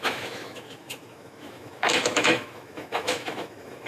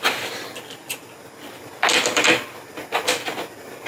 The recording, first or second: second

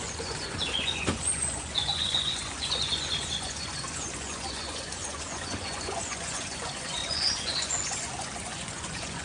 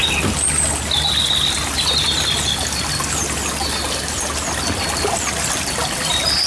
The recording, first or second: second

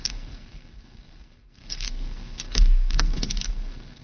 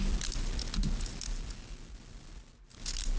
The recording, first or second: second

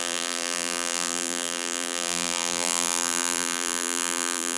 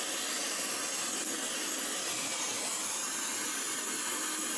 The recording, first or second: second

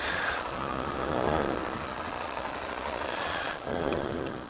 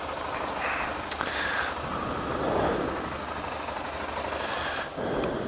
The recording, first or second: second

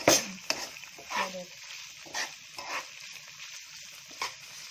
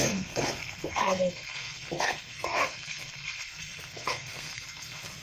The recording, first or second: first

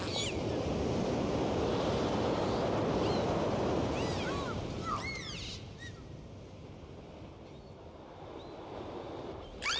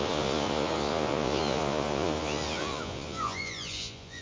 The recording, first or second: first